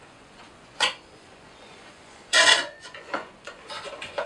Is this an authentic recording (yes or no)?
no